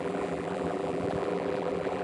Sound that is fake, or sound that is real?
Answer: fake